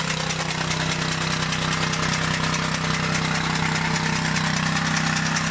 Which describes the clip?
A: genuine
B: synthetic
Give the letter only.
A